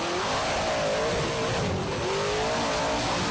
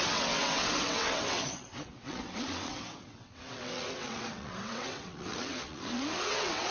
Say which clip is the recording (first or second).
first